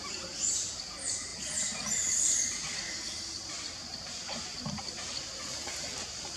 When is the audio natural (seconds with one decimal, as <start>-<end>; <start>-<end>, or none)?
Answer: 0.0-6.4